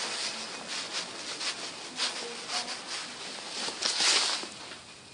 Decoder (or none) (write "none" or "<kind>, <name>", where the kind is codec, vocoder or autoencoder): none